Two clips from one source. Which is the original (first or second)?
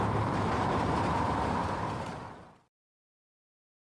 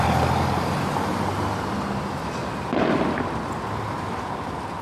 second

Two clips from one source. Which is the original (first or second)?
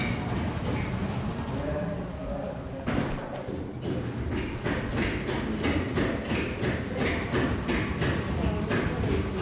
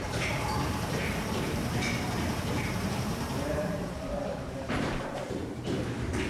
first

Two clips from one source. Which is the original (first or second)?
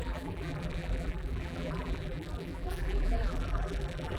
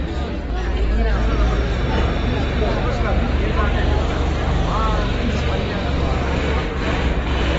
second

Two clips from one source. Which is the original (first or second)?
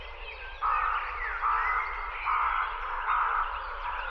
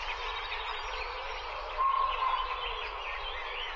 second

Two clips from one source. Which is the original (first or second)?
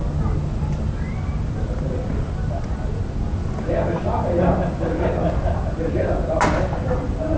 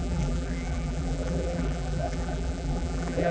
first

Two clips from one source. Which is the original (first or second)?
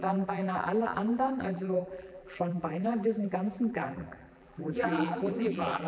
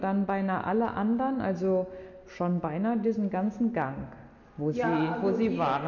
second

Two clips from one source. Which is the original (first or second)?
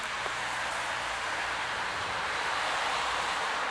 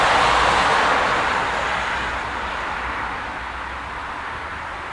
second